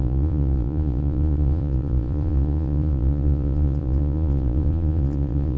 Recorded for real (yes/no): no